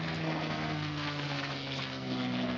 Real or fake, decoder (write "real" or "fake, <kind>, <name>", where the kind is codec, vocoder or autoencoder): fake, codec, SNAC